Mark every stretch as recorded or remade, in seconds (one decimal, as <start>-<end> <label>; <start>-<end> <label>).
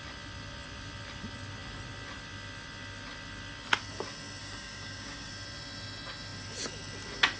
0.0-4.4 recorded; 4.4-5.3 remade; 5.3-7.4 recorded